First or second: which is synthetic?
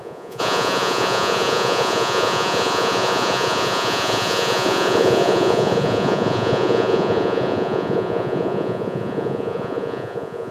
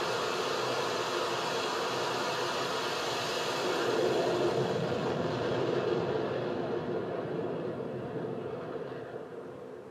first